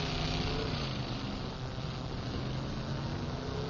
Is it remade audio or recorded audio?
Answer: recorded